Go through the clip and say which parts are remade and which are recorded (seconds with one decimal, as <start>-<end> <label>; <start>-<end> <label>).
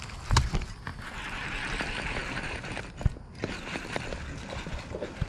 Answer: 0.0-5.3 recorded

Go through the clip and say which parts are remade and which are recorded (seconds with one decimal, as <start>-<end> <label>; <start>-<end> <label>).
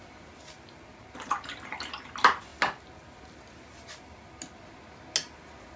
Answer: 0.0-5.8 recorded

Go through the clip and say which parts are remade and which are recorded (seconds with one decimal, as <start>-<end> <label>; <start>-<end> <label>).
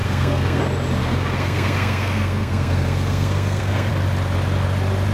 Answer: 0.0-0.6 remade; 0.6-1.0 recorded; 1.0-3.9 remade; 3.9-5.1 recorded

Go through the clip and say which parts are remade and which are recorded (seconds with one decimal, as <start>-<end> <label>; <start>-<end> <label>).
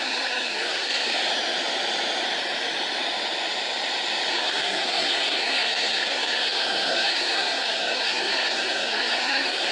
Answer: 0.0-1.1 remade; 1.1-4.3 recorded; 4.3-9.7 remade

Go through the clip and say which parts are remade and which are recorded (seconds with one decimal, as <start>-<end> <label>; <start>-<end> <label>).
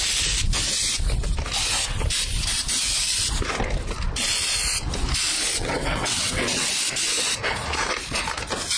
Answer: 0.0-5.5 recorded; 5.5-6.7 remade; 6.7-8.8 recorded